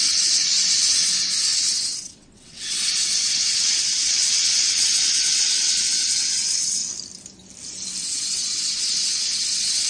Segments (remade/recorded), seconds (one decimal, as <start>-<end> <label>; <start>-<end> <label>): 0.0-6.8 remade; 6.8-8.0 recorded; 8.0-9.9 remade